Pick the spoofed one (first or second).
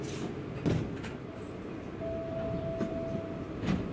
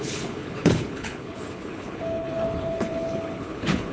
second